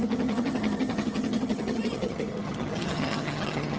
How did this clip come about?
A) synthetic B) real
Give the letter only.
A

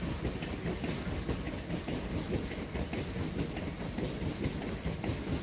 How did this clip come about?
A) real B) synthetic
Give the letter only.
A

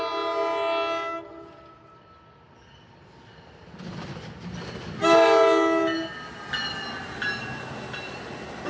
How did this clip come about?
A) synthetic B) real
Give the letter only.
B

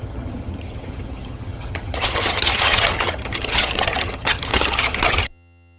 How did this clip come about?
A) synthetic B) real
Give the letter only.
A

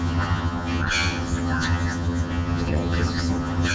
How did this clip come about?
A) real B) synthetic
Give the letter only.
B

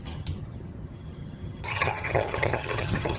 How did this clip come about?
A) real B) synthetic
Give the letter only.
B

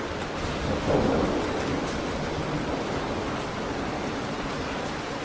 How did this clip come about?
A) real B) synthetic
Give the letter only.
A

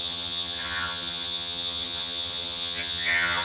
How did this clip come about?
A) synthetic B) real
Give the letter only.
A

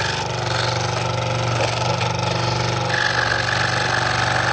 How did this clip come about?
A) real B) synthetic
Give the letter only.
A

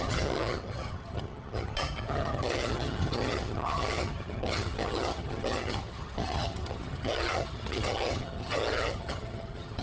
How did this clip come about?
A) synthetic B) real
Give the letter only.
A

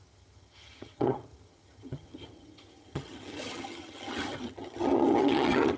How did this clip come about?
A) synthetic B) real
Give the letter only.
A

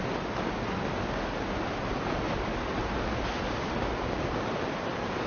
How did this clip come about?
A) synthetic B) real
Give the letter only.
B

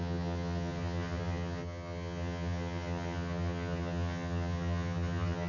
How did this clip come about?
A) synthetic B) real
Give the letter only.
A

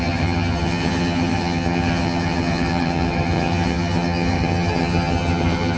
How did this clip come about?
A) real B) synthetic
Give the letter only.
B